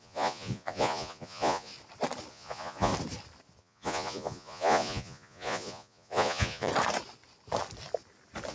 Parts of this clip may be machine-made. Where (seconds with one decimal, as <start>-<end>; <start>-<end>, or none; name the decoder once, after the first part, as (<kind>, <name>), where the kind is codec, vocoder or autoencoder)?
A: 0.0-1.7 (vocoder, Vocos); 2.3-2.9; 3.6-6.7